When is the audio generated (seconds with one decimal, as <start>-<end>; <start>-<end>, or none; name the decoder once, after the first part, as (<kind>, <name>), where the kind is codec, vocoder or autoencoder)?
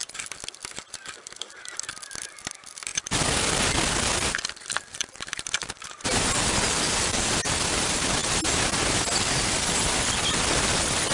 0.0-8.2 (vocoder, BigVGAN v2); 10.3-11.1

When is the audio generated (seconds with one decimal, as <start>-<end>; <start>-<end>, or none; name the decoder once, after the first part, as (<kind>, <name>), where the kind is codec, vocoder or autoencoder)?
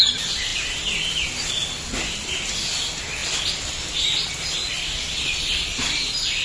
0.0-3.2 (vocoder, BigVGAN v2); 5.4-6.4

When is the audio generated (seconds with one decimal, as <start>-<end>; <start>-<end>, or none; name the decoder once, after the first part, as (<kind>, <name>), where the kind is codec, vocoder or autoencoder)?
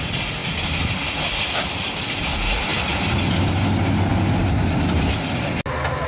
0.4-2.0 (vocoder, BigVGAN v2); 2.7-3.5; 4.1-4.8